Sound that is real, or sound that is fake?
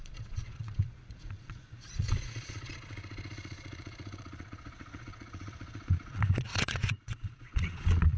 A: fake